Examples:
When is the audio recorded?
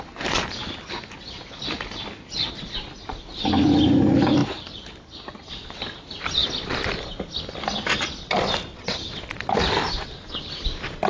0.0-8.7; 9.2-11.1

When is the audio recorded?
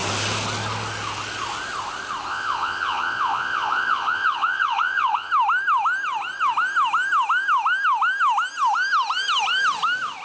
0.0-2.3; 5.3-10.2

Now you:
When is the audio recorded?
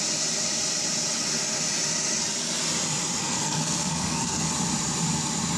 0.0-3.2; 4.5-5.6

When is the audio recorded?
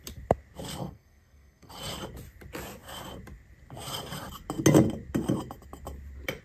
0.0-0.8; 1.7-6.4